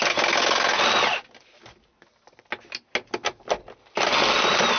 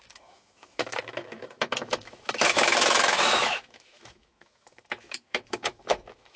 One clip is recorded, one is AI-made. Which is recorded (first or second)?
first